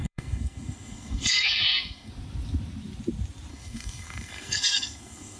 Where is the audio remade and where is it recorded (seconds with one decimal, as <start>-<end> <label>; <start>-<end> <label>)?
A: 0.0-2.1 remade; 2.1-3.5 recorded; 3.5-5.4 remade